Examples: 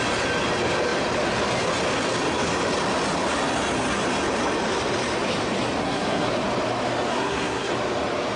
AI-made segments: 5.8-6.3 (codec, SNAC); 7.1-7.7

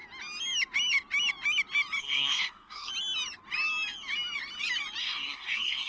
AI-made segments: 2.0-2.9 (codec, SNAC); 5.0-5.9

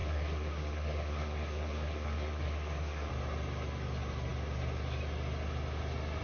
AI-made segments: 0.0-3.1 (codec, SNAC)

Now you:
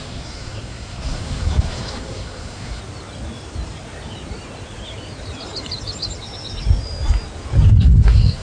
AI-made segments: 0.0-2.8 (codec, SNAC); 7.8-8.4

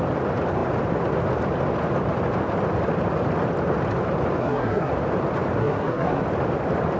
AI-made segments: 4.4-4.9 (codec, SNAC); 5.6-6.2

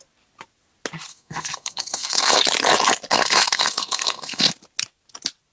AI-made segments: 1.1-2.4 (codec, SNAC); 3.1-4.5